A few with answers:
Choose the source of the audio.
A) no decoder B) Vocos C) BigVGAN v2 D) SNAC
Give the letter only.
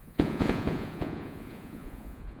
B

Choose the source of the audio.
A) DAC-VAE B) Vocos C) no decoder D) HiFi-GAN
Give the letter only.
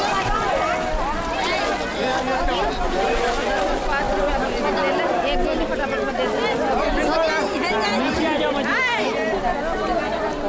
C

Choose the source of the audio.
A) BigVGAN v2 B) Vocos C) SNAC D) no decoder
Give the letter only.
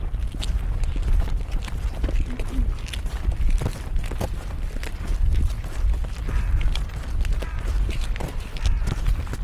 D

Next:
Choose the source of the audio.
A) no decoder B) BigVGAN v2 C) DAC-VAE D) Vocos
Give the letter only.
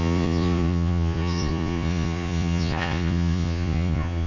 D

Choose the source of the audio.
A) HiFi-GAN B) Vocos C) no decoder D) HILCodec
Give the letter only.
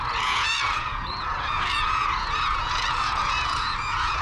B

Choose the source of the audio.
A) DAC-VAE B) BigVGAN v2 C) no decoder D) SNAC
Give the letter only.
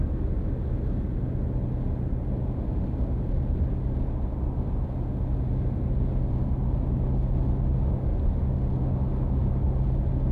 C